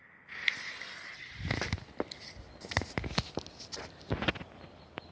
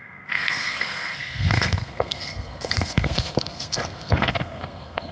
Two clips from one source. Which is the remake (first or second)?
second